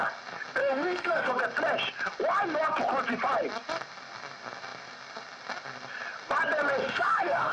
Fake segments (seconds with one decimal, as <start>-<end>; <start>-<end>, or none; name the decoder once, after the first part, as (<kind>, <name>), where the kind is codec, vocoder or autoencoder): 0.6-1.3 (autoencoder, DAC-VAE); 6.8-7.5